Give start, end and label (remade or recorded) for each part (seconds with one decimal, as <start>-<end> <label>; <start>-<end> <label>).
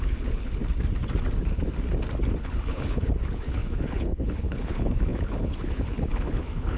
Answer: 0.0-0.6 remade; 0.6-2.4 recorded; 2.4-6.8 remade